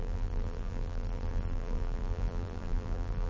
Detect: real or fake fake